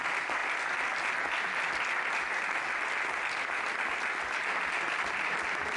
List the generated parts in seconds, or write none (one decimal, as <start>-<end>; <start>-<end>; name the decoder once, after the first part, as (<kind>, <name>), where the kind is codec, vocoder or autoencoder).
none